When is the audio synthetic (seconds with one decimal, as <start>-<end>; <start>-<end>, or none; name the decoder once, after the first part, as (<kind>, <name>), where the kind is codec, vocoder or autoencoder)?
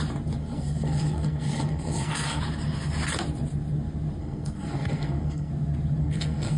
0.4-2.4 (codec, SNAC); 4.2-5.5; 6.0-6.6